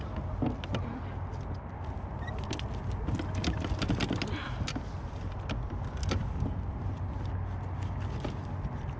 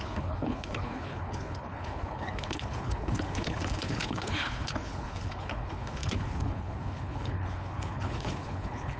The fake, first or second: second